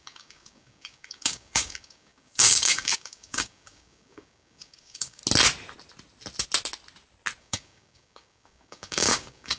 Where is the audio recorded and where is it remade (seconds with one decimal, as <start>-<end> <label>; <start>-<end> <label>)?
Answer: 0.0-5.2 remade; 5.2-7.4 recorded; 7.4-9.6 remade